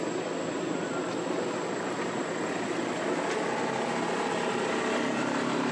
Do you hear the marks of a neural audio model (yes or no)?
no